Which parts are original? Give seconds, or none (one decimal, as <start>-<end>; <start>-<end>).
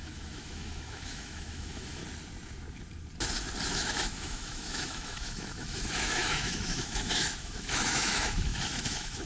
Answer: 2.0-3.7